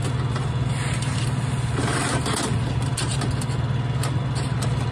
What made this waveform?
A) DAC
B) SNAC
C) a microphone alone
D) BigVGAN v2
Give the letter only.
C